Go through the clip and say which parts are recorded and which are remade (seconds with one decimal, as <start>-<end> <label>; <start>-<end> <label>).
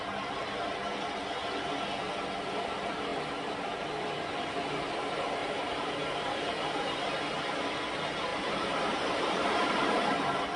0.0-3.1 recorded; 3.1-4.1 remade; 4.1-5.4 recorded; 5.4-7.4 remade; 7.4-8.3 recorded; 8.3-10.6 remade